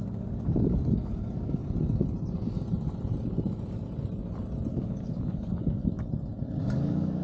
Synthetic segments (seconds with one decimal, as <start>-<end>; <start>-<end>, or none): 0.0-1.6; 4.7-5.8; 6.6-7.2